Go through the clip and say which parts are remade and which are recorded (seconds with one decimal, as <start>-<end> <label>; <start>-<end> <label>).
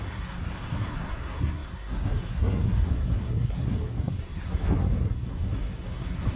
0.0-6.4 remade